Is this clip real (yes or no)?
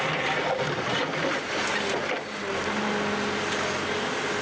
yes